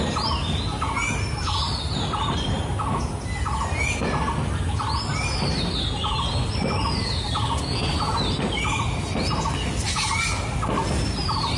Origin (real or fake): real